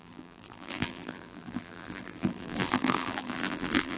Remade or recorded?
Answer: remade